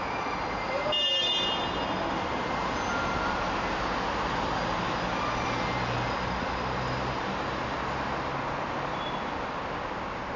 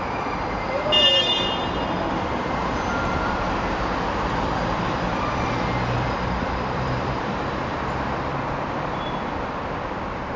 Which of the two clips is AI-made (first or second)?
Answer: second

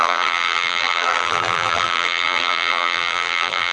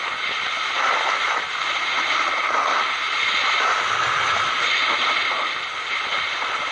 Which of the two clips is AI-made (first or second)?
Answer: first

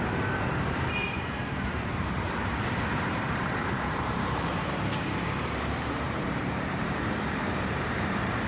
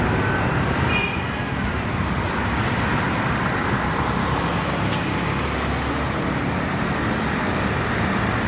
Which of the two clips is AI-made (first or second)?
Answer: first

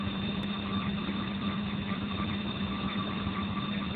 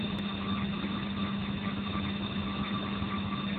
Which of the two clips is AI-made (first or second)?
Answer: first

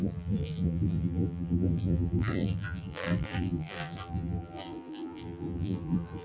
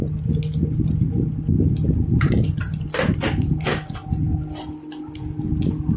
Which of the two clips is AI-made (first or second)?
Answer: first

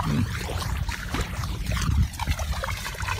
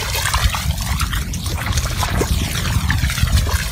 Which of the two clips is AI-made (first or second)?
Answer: first